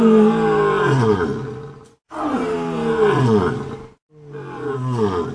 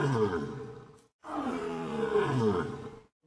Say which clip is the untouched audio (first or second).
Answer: first